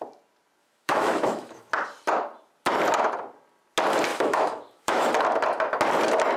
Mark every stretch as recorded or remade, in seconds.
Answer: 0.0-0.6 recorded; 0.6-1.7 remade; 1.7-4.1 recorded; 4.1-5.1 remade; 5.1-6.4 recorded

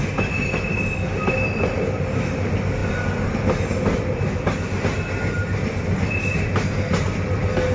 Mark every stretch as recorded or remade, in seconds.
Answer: 0.0-7.7 recorded